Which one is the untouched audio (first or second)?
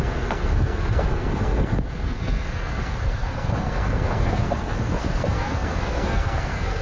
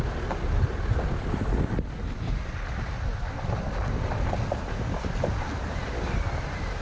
second